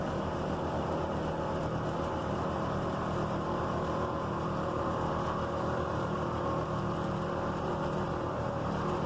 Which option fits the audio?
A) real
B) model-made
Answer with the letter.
B